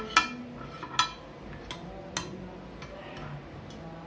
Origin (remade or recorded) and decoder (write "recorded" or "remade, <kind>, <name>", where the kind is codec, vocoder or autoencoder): recorded